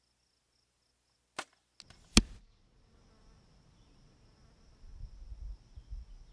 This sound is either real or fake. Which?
real